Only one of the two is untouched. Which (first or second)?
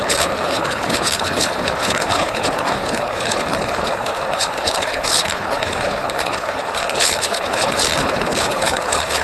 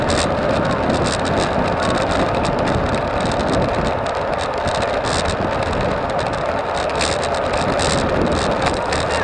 second